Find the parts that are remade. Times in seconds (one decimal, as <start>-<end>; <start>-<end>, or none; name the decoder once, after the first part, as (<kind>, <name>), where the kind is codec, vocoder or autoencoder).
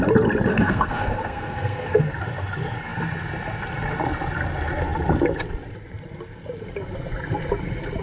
0.5-2.0 (codec, SNAC)